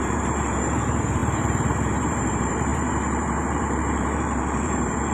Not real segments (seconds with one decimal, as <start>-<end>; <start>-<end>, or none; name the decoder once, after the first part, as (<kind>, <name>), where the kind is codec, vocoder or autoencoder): 0.0-5.1 (vocoder, BigVGAN v2)